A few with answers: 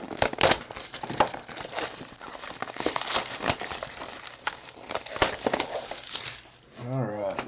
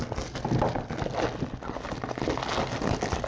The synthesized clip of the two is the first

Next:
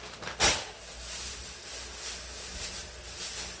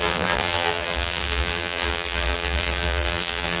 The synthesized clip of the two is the second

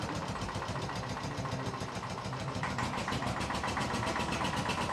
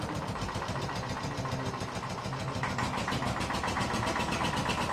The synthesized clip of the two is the first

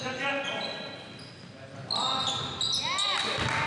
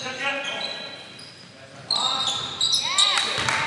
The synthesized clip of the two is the second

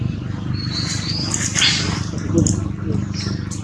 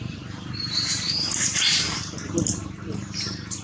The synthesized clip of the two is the second